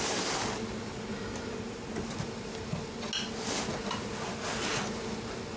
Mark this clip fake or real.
real